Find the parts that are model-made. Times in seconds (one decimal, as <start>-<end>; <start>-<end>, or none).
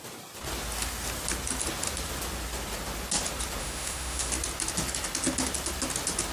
3.6-4.3